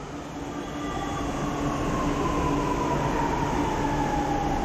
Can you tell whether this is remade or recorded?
recorded